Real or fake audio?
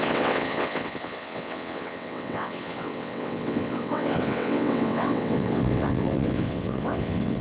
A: fake